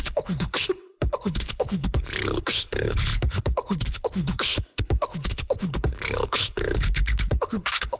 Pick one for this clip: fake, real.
fake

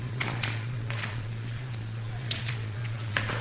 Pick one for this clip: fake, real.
fake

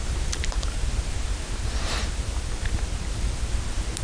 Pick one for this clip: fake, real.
real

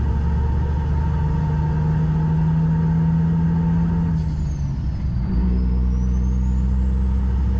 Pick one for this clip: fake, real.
real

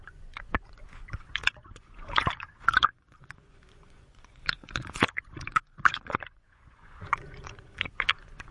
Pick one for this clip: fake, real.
fake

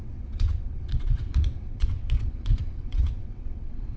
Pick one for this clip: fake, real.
fake